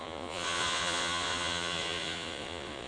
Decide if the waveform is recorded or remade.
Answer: remade